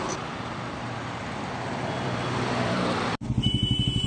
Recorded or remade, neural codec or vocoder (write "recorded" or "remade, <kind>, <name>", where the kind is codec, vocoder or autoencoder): remade, vocoder, BigVGAN v2